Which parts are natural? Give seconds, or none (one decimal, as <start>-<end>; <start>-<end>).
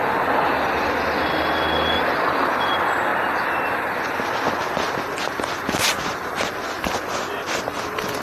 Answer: 0.0-8.2